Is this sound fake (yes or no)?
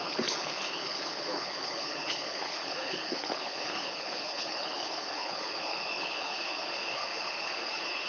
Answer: yes